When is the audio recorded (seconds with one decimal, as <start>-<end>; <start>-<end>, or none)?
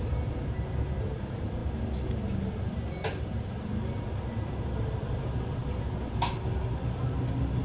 0.0-7.6